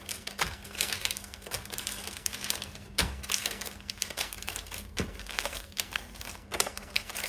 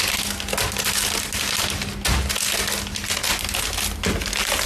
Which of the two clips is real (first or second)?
second